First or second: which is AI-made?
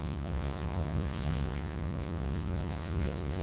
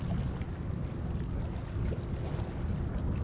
first